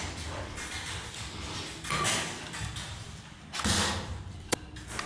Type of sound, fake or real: real